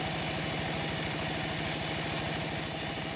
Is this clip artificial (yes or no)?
no